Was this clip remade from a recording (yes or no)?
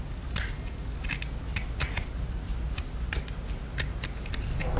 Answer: no